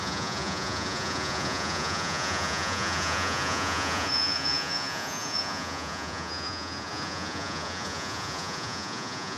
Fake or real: fake